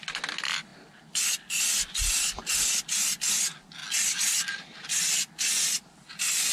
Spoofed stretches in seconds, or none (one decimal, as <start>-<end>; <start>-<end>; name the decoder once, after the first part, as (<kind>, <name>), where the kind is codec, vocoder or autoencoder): none